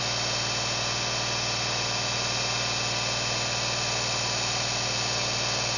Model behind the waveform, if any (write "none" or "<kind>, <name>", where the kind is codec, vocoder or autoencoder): none